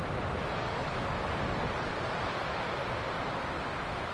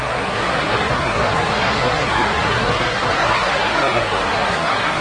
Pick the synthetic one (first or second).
second